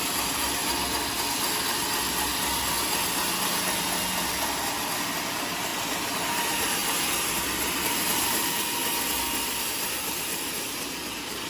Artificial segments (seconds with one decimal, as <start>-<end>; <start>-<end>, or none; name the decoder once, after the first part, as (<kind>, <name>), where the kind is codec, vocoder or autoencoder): 0.0-0.6 (vocoder, BigVGAN v2); 5.2-5.7; 6.3-6.8; 7.8-8.8; 9.6-11.5